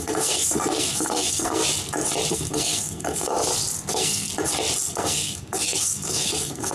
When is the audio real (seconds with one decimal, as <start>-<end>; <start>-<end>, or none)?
1.6-2.3; 3.3-3.9; 4.3-4.9

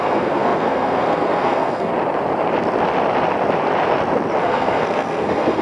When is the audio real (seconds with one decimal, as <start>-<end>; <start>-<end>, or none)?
1.9-4.4

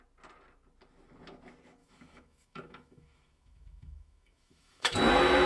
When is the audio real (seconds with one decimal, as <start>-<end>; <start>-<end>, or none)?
0.0-1.8; 5.1-5.5

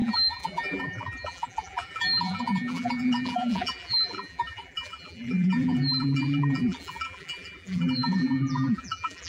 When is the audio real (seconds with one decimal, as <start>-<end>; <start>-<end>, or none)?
none

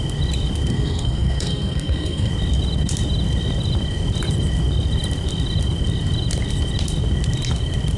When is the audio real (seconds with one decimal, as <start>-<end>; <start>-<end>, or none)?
0.0-0.7; 2.3-8.0

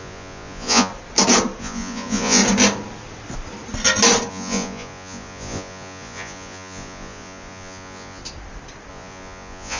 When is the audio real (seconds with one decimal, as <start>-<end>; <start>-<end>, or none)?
0.9-1.6; 2.4-4.3; 8.2-8.9

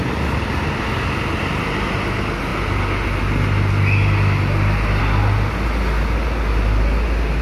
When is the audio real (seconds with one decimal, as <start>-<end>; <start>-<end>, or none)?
0.0-7.4

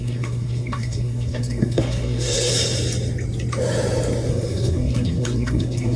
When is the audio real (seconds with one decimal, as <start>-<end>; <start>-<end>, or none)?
2.5-4.3